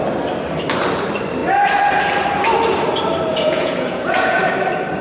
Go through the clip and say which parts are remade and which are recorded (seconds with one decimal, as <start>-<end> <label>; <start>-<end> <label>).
0.0-3.3 recorded; 3.3-4.4 remade; 4.4-5.0 recorded